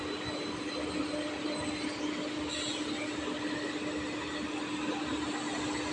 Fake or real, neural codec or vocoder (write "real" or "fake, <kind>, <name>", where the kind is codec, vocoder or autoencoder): real